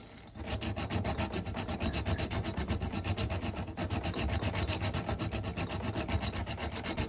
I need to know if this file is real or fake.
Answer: real